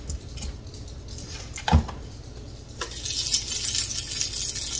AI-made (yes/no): no